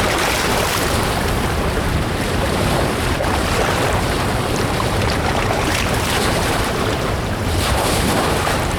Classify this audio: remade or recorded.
remade